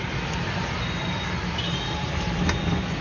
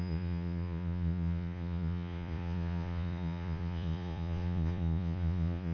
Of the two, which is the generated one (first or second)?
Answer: second